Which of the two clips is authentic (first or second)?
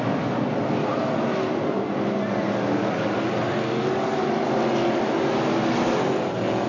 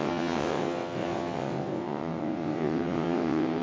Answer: first